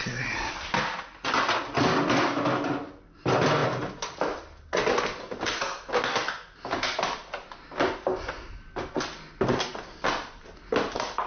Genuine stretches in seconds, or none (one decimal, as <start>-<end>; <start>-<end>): 0.0-11.3